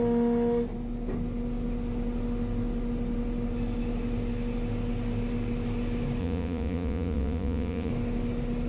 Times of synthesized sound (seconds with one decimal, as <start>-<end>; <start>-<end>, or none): 6.2-7.9